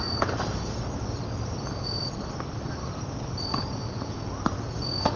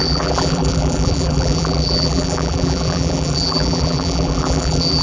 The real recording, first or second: first